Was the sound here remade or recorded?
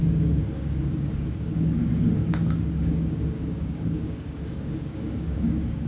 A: remade